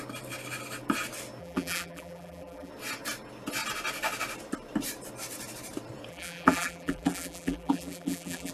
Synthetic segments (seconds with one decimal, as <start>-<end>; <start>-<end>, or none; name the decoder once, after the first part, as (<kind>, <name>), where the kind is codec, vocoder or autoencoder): 1.4-2.7 (vocoder, BigVGAN v2); 6.1-8.5